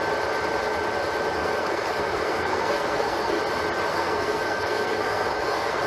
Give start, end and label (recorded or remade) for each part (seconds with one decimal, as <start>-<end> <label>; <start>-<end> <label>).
0.0-1.4 recorded; 1.4-3.4 remade; 3.4-3.9 recorded; 3.9-5.9 remade